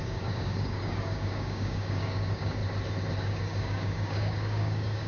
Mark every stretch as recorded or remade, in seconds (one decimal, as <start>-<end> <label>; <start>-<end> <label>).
0.0-2.6 remade; 2.6-3.2 recorded; 3.2-5.1 remade